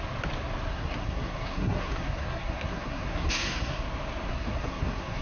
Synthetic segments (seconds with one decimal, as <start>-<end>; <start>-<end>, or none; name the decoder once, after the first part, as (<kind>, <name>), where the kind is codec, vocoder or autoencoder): 0.7-3.8 (codec, SNAC); 4.3-5.2